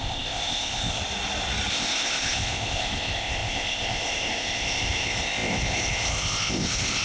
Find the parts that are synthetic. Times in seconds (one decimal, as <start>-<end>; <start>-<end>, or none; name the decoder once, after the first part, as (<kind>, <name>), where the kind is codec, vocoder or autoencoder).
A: 0.0-1.0 (codec, ZipCodec); 1.7-7.0